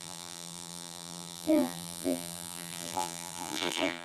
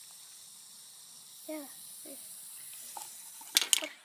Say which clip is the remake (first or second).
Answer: first